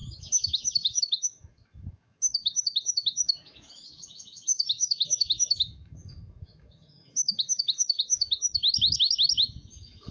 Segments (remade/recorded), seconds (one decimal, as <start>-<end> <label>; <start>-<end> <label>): 0.0-10.1 remade